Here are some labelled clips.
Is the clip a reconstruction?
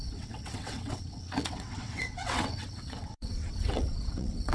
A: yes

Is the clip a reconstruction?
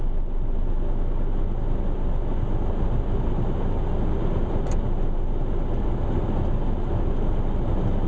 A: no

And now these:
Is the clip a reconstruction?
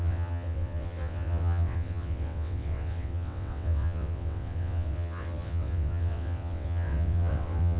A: yes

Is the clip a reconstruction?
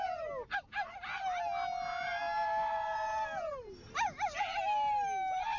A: no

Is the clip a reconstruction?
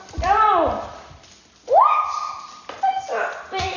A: no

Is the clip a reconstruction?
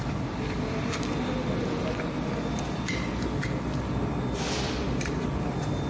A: no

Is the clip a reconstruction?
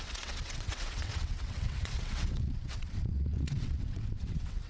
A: yes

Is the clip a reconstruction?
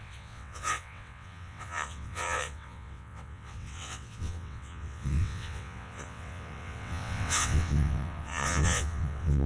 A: yes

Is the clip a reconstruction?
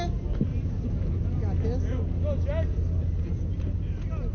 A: no